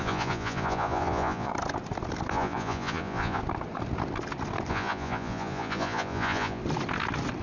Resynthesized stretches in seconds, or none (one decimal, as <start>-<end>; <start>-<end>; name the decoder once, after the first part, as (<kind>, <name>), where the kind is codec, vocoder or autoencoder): 0.0-1.5 (vocoder, Vocos); 2.3-3.4; 4.7-6.6